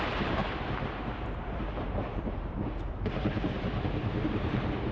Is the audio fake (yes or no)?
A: yes